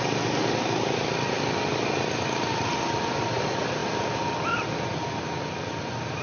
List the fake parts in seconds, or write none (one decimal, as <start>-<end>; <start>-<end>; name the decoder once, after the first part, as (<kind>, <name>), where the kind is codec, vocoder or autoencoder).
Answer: none